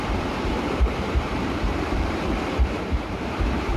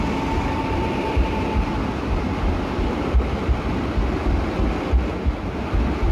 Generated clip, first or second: first